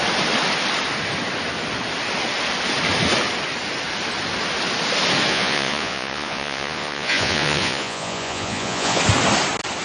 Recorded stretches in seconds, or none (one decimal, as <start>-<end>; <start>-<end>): 0.0-5.3; 9.0-9.8